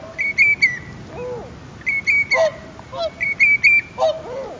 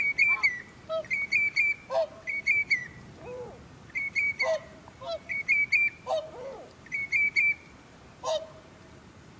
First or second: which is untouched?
first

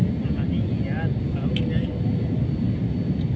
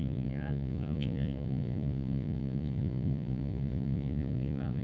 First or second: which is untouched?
first